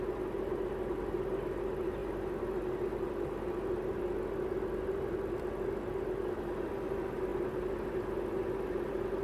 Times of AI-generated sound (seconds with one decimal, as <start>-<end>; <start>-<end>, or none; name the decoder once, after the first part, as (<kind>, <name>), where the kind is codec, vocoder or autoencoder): none